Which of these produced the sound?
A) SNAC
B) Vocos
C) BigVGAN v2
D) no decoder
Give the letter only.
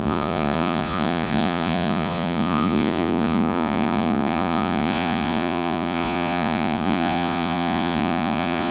B